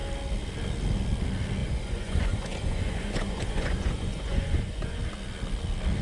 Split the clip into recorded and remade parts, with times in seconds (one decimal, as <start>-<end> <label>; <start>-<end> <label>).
0.0-1.6 recorded; 1.6-5.0 remade; 5.0-6.0 recorded